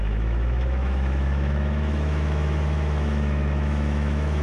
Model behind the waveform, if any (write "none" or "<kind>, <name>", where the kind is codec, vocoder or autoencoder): autoencoder, DAC-VAE